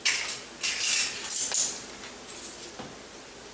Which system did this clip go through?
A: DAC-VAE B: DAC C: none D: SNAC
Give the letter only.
C